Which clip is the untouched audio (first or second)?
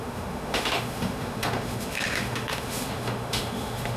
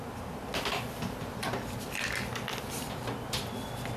second